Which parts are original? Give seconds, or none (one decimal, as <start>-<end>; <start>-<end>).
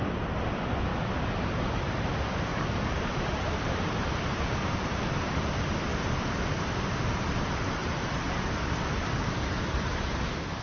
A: 0.0-0.9; 2.1-2.5; 5.0-7.8; 10.1-10.6